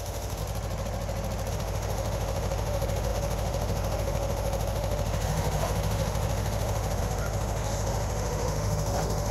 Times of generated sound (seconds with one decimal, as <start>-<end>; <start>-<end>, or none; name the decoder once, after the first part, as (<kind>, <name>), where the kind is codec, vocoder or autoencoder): 0.0-0.4 (autoencoder, DAC-VAE); 1.5-9.3